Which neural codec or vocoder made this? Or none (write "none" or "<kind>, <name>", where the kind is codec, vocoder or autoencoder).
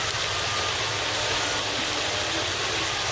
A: none